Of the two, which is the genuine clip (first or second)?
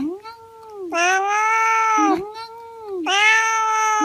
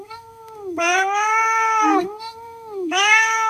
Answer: first